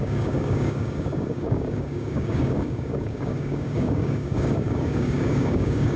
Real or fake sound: fake